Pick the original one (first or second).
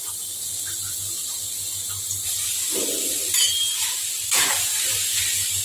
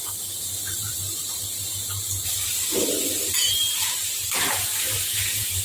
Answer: first